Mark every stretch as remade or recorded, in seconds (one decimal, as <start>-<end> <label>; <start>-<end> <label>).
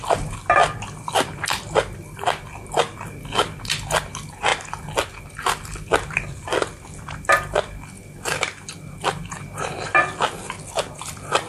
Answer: 0.0-11.5 recorded